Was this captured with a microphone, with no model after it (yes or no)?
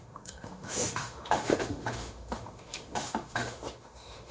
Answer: no